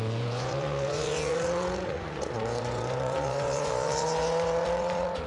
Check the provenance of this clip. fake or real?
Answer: fake